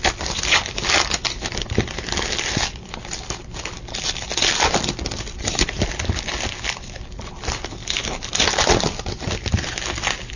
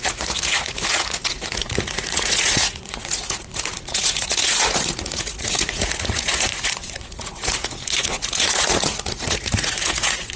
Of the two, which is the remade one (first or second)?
second